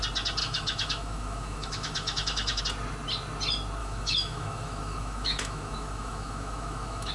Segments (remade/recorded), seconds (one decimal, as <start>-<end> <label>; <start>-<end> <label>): 0.0-0.4 recorded; 0.4-2.6 remade; 2.6-3.8 recorded; 3.8-7.1 remade